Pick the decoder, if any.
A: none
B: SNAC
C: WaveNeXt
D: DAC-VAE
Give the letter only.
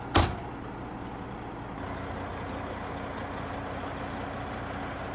A